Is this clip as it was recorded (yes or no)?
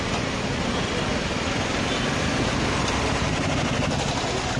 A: yes